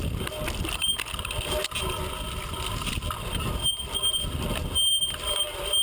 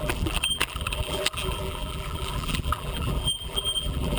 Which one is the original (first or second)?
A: first